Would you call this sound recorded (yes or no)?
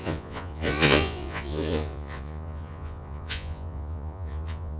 no